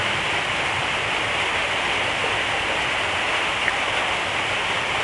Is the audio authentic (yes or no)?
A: yes